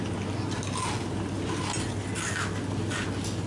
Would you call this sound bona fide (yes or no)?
yes